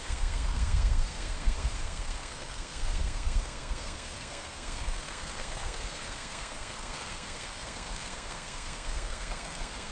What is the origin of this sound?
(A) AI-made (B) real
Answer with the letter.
A